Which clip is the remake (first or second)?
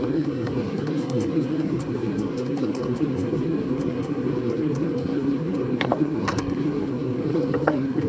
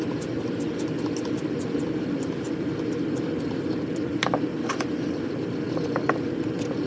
first